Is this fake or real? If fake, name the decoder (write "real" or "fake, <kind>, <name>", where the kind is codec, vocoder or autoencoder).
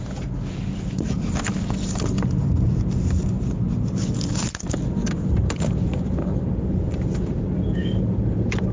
real